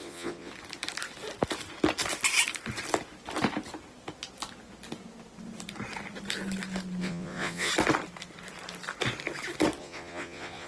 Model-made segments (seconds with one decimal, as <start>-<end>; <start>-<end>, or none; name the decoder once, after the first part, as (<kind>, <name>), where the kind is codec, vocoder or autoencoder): 0.0-0.5 (vocoder, Vocos); 7.0-7.7; 9.8-10.7